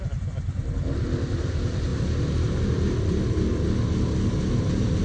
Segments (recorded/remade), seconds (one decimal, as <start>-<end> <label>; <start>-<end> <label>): 0.0-5.0 recorded